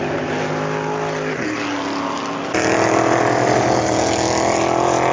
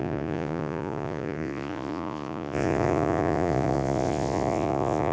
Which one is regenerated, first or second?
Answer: second